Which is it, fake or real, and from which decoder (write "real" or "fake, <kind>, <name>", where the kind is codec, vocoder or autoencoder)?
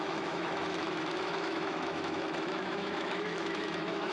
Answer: fake, autoencoder, DAC-VAE